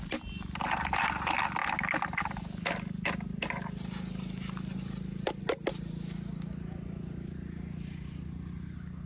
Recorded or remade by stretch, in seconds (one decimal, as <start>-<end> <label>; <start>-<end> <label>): 0.0-9.1 recorded